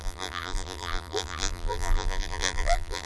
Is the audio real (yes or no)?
no